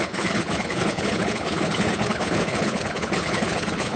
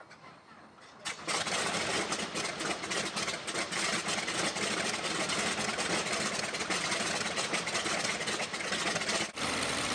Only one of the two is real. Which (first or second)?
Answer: second